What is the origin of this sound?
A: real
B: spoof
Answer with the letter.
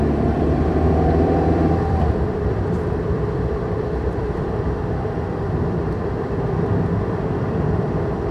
B